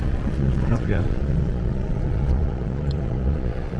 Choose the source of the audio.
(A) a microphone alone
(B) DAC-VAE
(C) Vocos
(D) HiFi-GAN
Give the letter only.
C